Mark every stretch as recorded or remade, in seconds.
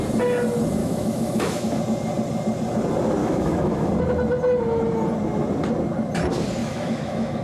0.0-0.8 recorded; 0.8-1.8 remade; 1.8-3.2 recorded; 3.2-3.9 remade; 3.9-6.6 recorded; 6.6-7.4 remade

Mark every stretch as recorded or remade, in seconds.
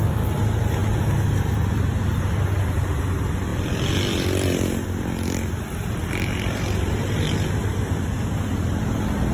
0.0-9.3 recorded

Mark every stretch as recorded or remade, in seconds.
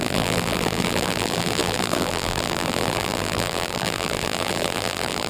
0.0-5.3 remade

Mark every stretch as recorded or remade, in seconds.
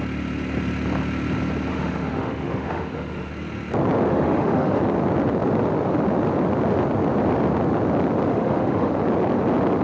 0.0-1.7 recorded; 1.7-3.3 remade; 3.3-4.1 recorded; 4.1-4.8 remade; 4.8-8.3 recorded; 8.3-8.9 remade; 8.9-9.8 recorded